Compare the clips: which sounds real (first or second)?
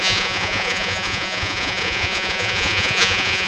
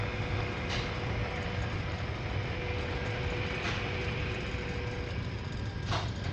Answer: second